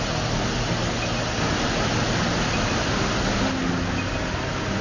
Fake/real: real